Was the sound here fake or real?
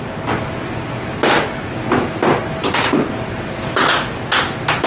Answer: real